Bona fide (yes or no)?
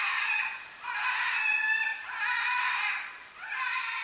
yes